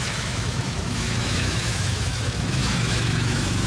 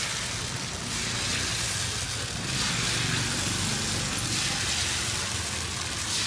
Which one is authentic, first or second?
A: second